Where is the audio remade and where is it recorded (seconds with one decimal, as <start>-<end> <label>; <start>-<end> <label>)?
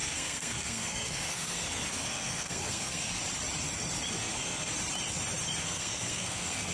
0.0-3.2 remade; 3.2-4.1 recorded; 4.1-4.7 remade; 4.7-5.6 recorded; 5.6-6.7 remade